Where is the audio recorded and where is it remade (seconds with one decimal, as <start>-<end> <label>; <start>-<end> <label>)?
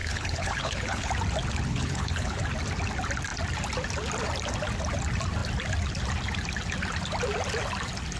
0.0-1.1 remade; 1.1-1.7 recorded; 1.7-2.4 remade; 2.4-8.2 recorded